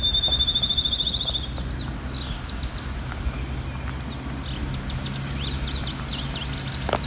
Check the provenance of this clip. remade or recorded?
recorded